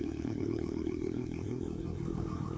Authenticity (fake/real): fake